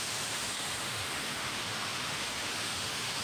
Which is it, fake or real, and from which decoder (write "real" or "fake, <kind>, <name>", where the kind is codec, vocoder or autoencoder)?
fake, autoencoder, DAC-VAE